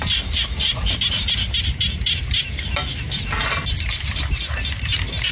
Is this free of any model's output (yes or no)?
yes